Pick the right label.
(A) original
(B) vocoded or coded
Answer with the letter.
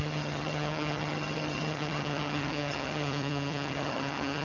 B